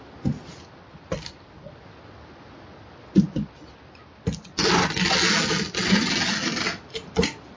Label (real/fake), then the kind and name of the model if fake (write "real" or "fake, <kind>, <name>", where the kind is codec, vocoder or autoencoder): real